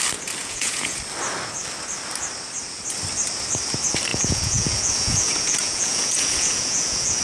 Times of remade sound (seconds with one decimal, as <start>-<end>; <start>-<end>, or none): 0.4-1.0; 4.1-7.2